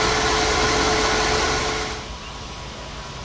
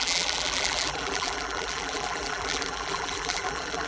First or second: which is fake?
second